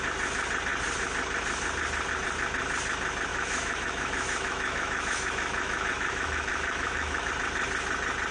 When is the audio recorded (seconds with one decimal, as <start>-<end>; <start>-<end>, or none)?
0.0-3.3; 7.3-8.3